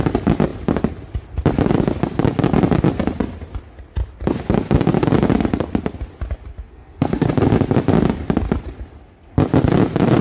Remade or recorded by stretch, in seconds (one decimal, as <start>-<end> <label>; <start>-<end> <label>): 0.0-6.5 recorded; 6.5-7.3 remade; 7.3-10.2 recorded